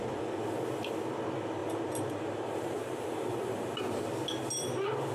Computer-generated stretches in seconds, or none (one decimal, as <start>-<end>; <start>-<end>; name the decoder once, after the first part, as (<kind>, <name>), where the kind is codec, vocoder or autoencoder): 1.6-3.8 (vocoder, BigVGAN v2)